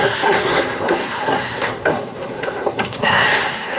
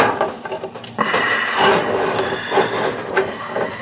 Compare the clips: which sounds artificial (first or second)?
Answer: first